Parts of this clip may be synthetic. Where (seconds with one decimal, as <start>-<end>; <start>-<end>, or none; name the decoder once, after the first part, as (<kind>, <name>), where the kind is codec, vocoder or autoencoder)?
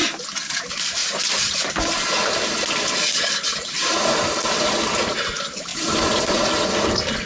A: 0.5-1.0 (vocoder, BigVGAN v2); 2.8-5.7; 6.2-7.3